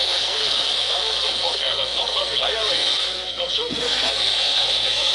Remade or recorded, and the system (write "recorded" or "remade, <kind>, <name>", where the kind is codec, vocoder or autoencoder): remade, codec, SNAC